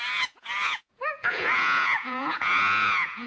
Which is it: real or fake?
fake